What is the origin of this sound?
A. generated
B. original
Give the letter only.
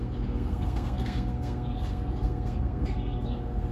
A